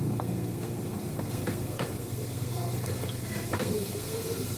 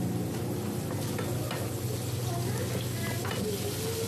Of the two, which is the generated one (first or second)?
first